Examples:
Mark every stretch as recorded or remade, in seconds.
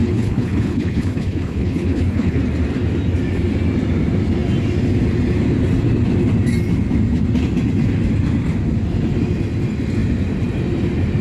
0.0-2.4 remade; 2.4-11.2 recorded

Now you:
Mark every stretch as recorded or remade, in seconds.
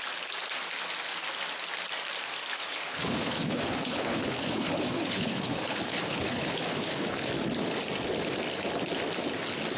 0.0-2.6 recorded; 2.6-7.3 remade; 7.3-9.8 recorded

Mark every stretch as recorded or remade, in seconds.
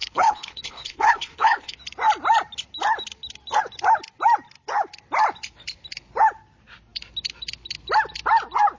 0.0-1.8 remade; 1.8-8.8 recorded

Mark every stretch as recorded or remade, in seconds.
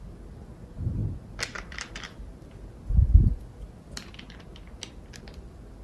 0.0-5.8 recorded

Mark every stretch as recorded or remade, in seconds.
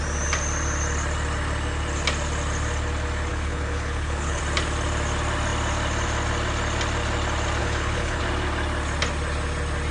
0.0-3.3 recorded; 3.3-4.4 remade; 4.4-7.6 recorded; 7.6-8.2 remade; 8.2-9.9 recorded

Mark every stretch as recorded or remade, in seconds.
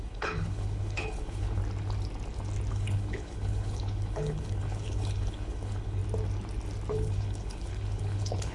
0.0-1.6 remade; 1.6-2.7 recorded; 2.7-6.0 remade; 6.0-6.9 recorded; 6.9-8.5 remade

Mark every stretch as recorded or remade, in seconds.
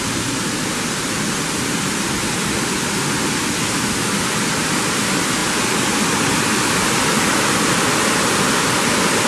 0.0-9.3 recorded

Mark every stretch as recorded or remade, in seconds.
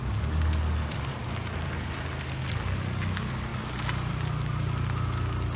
0.0-5.6 recorded